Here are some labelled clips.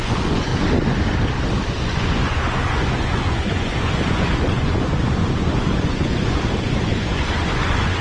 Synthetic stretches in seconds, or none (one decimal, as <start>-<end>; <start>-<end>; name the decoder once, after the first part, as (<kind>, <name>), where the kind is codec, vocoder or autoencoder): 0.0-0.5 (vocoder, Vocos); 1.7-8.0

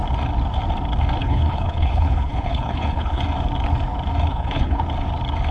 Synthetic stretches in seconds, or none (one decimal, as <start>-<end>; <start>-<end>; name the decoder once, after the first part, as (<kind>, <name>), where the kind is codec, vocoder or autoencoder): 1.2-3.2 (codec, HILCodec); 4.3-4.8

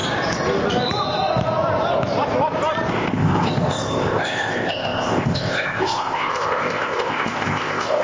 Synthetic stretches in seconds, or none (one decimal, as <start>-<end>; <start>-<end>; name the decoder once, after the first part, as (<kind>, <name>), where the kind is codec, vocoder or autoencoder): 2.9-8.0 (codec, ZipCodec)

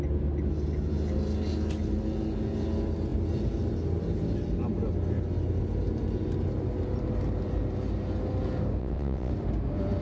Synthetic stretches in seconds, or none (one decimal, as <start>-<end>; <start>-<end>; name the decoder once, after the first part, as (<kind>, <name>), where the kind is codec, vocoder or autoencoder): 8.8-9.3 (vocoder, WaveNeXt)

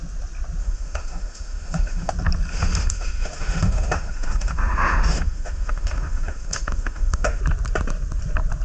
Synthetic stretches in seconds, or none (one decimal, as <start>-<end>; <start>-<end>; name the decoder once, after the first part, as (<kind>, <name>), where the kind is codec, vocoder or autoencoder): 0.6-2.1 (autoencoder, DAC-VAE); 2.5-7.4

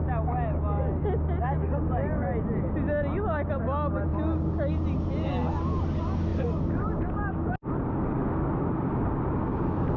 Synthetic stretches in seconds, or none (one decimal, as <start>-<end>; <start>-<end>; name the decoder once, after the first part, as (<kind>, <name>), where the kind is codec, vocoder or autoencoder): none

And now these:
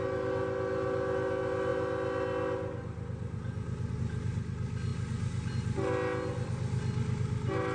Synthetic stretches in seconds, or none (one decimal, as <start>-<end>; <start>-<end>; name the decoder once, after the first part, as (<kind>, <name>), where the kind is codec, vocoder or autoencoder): none

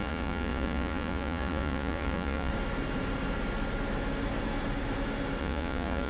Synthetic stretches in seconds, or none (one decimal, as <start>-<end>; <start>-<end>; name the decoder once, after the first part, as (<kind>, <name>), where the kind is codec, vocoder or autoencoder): 0.0-2.5 (vocoder, Vocos); 5.4-6.1